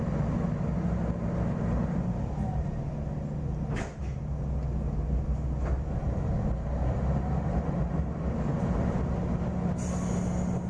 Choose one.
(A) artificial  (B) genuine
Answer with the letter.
B